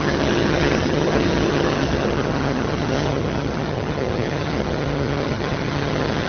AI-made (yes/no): yes